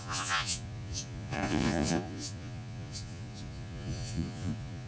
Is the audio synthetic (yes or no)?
yes